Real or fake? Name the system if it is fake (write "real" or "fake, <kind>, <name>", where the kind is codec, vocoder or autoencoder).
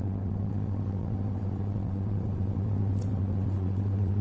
fake, vocoder, WaveNeXt